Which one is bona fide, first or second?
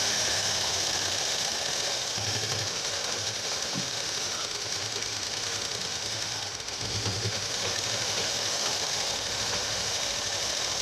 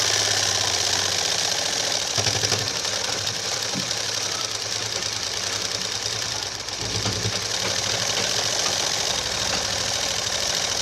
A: second